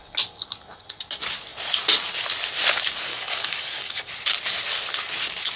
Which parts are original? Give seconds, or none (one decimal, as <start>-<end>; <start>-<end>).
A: 0.0-3.1; 4.1-5.6